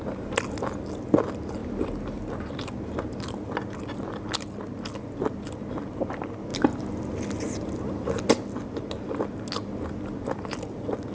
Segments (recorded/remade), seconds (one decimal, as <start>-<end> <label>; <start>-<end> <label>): 0.0-11.1 recorded